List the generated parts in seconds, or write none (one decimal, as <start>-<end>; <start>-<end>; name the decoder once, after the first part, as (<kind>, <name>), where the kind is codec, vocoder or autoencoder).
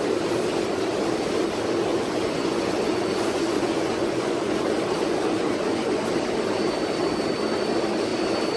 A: 1.9-4.6 (vocoder, Vocos); 5.0-6.0